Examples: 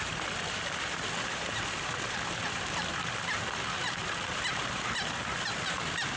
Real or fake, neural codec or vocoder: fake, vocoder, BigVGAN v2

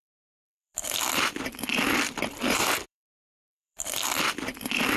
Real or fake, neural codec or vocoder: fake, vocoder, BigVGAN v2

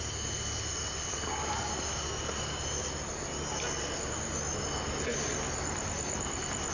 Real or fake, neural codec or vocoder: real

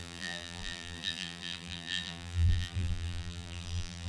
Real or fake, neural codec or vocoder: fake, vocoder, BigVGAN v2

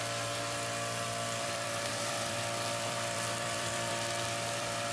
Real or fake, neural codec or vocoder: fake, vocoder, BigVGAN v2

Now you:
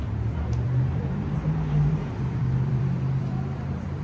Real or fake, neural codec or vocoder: fake, vocoder, BigVGAN v2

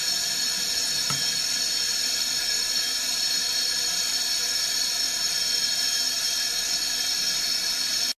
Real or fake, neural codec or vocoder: real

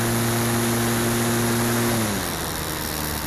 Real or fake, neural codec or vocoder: real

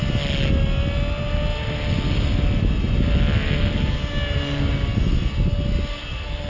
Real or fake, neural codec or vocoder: real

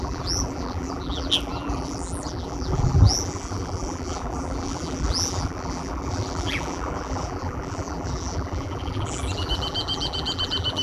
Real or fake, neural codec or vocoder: fake, vocoder, BigVGAN v2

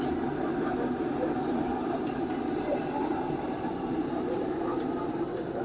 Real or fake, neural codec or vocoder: fake, vocoder, BigVGAN v2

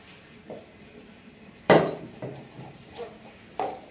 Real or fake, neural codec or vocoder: fake, vocoder, BigVGAN v2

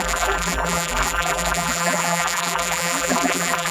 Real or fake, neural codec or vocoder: fake, vocoder, BigVGAN v2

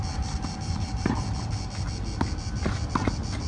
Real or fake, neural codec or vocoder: real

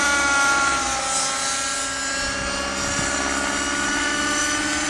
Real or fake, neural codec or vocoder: real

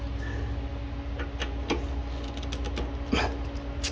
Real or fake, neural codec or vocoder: real